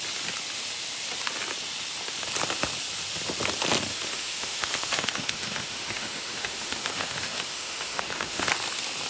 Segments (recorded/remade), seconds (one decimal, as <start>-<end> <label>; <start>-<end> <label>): 0.0-3.9 recorded; 3.9-8.5 remade; 8.5-9.1 recorded